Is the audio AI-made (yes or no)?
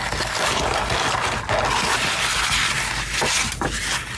no